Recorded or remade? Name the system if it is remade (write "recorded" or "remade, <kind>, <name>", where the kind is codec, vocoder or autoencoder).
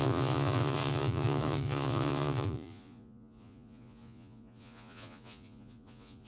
remade, vocoder, Vocos